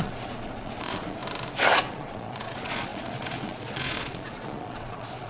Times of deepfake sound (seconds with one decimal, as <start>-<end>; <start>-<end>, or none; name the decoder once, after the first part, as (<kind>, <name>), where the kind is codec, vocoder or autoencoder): 0.0-1.2 (vocoder, Vocos); 1.9-5.3